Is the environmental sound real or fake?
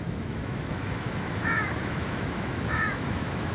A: fake